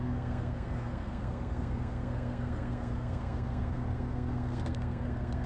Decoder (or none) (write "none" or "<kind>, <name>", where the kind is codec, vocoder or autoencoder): codec, SNAC